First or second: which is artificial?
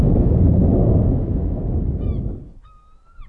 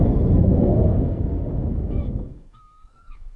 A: second